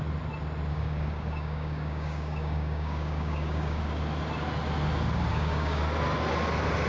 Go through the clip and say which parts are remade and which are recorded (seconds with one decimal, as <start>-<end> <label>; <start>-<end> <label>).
0.0-0.7 recorded; 0.7-3.8 remade; 3.8-5.3 recorded; 5.3-5.8 remade; 5.8-6.9 recorded